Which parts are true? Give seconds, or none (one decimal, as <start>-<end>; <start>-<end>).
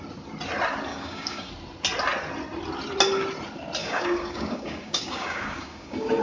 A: 0.0-0.9; 1.5-3.8